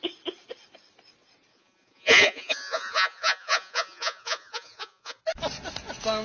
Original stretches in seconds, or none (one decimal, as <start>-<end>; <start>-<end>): 0.0-1.5; 5.2-6.2